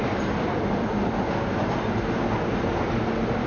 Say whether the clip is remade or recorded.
recorded